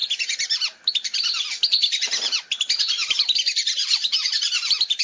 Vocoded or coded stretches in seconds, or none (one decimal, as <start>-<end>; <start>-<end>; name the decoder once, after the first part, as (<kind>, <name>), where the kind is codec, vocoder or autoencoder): 0.9-5.0 (vocoder, BigVGAN v2)